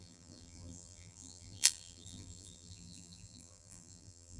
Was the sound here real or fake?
fake